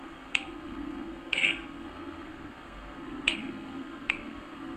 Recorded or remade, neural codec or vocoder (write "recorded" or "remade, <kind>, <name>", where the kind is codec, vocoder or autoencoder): remade, codec, SNAC